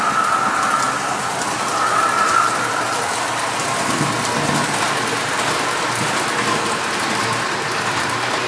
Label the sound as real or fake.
real